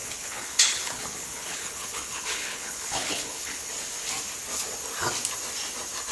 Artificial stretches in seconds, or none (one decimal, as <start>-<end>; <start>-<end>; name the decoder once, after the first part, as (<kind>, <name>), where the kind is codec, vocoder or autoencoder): 0.0-3.7 (codec, HILCodec)